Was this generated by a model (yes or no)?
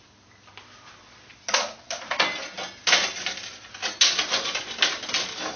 no